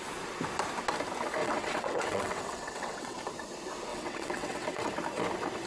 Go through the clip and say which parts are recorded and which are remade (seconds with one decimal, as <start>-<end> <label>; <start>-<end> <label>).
0.0-1.4 recorded; 1.4-3.2 remade; 3.2-3.9 recorded; 3.9-4.9 remade; 4.9-5.7 recorded